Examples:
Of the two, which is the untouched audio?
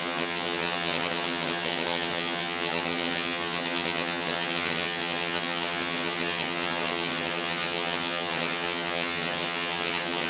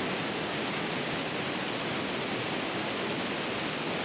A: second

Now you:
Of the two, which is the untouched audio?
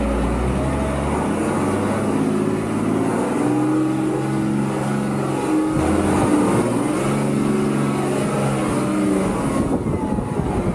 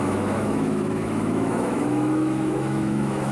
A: first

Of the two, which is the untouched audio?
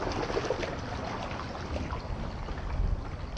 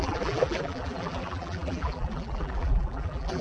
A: first